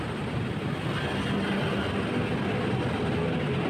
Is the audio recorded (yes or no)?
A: yes